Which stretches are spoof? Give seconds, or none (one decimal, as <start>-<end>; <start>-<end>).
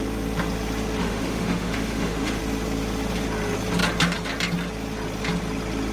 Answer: 1.0-2.4